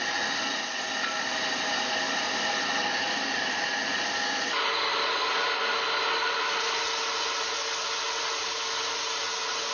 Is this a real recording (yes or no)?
yes